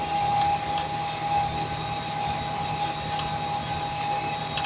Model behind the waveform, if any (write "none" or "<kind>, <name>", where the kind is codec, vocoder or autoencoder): none